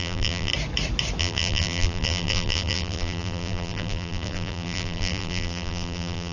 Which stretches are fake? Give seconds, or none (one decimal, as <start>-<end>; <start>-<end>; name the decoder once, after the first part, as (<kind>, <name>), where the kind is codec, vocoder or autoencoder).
0.0-0.5 (vocoder, BigVGAN v2); 1.2-6.3

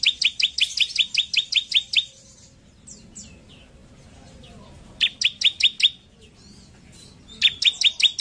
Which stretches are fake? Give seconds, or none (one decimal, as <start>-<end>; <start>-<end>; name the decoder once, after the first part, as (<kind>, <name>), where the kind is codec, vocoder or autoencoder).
none

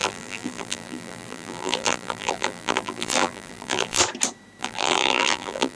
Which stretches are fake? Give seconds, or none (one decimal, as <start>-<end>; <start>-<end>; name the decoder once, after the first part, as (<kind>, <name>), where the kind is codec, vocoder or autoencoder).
0.0-4.0 (vocoder, BigVGAN v2); 4.6-5.8

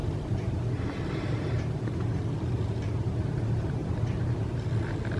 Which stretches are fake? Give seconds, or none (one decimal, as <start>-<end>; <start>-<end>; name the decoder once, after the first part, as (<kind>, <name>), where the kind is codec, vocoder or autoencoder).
0.0-1.4 (vocoder, BigVGAN v2); 3.8-4.5

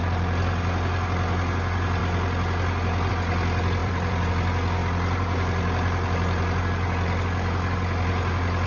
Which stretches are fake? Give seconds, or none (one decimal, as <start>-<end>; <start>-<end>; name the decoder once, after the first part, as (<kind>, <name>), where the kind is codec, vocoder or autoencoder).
3.8-4.3 (vocoder, BigVGAN v2)

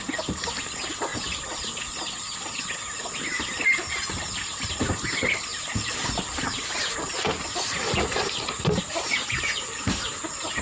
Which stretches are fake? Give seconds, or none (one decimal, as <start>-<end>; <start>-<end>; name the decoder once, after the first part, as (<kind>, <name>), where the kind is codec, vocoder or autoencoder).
5.5-6.9 (vocoder, BigVGAN v2)